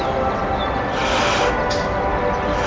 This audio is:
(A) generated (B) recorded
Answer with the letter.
B